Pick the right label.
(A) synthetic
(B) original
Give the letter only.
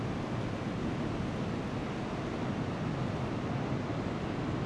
B